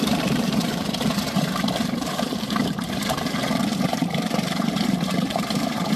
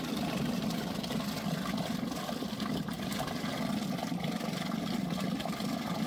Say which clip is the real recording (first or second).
second